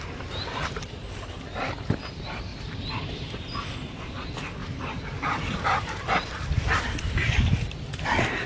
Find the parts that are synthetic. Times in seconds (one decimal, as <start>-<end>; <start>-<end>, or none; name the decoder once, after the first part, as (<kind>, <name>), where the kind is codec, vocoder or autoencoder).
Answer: 2.5-3.1 (vocoder, BigVGAN v2); 4.6-7.8